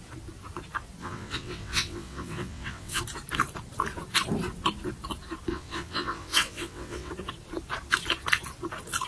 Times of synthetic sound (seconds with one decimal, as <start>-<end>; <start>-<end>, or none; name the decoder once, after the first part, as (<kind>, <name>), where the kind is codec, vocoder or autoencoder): 1.0-3.0 (vocoder, WaveNeXt); 5.5-7.1